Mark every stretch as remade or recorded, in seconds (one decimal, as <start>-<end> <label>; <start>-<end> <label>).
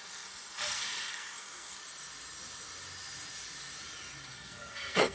0.0-1.8 remade; 1.8-4.3 recorded; 4.3-5.1 remade